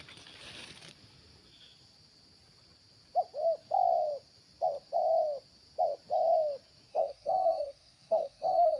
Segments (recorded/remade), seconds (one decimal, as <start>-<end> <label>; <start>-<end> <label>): 0.0-6.9 recorded; 6.9-8.8 remade